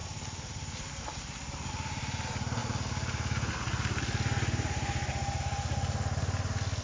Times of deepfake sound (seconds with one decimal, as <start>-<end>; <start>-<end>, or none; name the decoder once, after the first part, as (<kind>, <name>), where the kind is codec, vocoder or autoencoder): 0.0-1.7 (vocoder, BigVGAN v2)